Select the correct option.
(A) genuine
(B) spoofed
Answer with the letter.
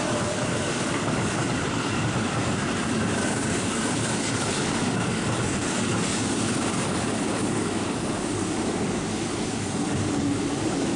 B